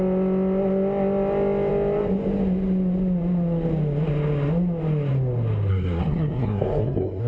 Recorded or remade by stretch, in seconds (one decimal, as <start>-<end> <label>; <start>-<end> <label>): 0.0-5.7 recorded; 5.7-7.3 remade